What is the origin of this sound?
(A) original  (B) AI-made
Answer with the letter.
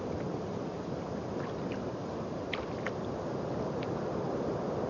A